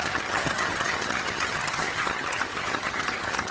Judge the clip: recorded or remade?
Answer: remade